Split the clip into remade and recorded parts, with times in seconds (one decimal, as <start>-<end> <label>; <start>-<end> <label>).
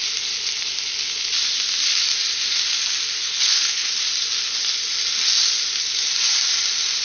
0.0-3.2 recorded; 3.2-3.9 remade; 3.9-7.0 recorded